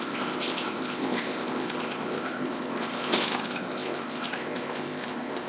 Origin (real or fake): fake